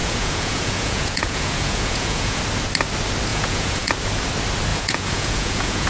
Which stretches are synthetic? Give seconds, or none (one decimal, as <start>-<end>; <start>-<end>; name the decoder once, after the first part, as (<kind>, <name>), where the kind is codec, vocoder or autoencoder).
0.0-2.4 (vocoder, Vocos); 3.3-3.9; 4.7-5.9